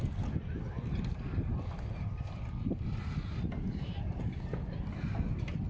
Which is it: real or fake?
real